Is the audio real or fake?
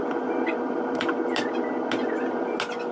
real